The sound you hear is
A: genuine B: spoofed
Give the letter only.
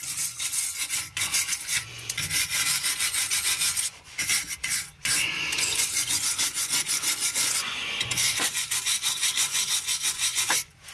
B